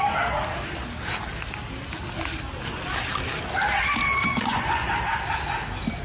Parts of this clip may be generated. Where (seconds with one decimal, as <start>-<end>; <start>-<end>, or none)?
4.3-4.9